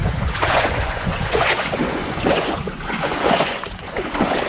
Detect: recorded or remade remade